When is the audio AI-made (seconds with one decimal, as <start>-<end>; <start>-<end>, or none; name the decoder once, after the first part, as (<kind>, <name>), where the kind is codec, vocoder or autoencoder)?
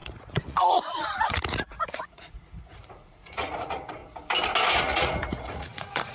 0.0-4.0 (vocoder, Vocos); 4.8-6.1